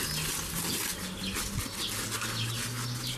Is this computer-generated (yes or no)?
no